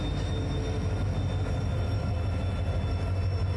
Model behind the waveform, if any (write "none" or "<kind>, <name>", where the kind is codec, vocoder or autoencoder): none